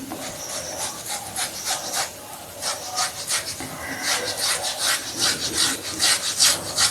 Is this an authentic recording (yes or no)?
yes